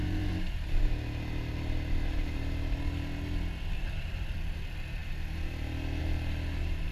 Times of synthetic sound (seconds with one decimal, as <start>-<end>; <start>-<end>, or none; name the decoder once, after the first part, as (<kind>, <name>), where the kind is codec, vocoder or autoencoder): 0.0-0.5 (vocoder, BigVGAN v2)